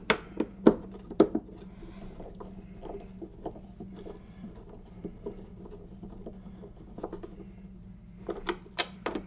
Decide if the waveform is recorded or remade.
recorded